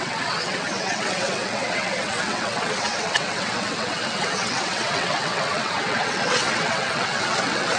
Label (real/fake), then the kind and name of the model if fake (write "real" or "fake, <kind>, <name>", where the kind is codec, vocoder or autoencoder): fake, vocoder, WaveNeXt